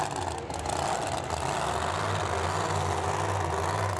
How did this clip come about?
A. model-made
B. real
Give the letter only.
B